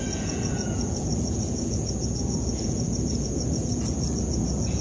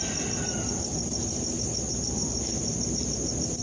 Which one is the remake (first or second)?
first